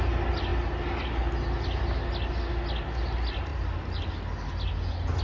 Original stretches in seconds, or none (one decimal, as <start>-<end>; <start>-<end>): 0.0-3.5; 4.1-5.2

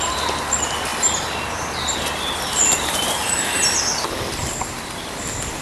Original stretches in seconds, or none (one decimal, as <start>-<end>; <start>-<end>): 0.0-0.9; 2.9-3.9; 4.6-5.6

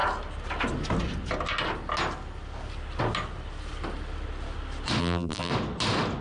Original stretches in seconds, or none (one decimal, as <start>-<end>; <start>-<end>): 0.0-5.0; 5.5-6.2